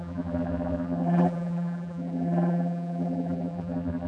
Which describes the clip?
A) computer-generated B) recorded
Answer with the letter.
A